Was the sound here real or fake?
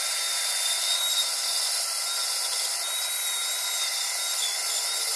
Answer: real